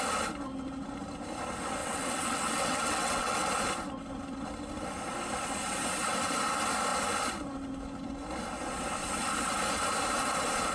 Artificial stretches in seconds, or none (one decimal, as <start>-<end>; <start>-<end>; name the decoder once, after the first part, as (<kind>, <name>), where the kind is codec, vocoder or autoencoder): 1.8-3.5 (vocoder, WaveNeXt)